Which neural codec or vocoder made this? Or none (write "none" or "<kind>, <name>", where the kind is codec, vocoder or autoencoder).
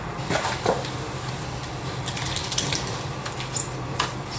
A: none